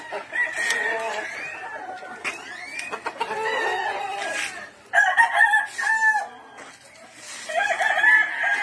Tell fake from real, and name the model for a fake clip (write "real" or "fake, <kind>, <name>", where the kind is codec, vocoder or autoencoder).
real